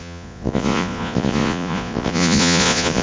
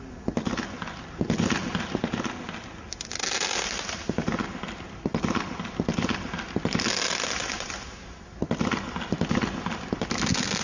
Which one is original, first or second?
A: second